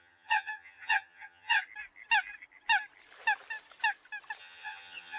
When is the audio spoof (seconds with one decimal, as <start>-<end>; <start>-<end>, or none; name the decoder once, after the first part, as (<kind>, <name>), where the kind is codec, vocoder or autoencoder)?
0.0-1.6 (vocoder, HiFi-GAN); 4.4-5.2